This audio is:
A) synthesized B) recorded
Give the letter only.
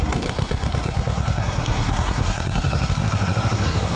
A